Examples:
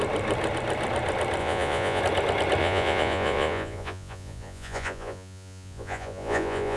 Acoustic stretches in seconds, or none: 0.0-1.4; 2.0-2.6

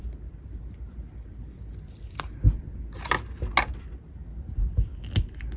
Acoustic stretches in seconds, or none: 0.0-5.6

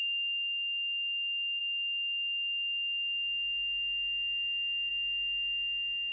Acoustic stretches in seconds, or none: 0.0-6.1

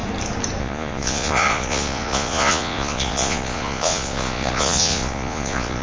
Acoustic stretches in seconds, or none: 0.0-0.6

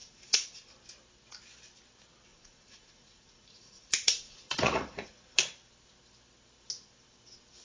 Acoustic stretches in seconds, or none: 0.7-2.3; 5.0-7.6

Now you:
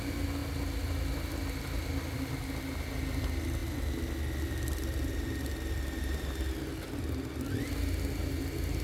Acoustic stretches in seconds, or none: 0.0-8.8

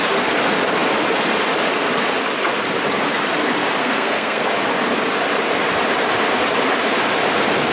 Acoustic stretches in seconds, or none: 0.0-3.8; 4.4-7.7

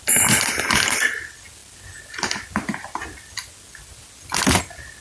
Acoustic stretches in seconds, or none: 0.0-5.0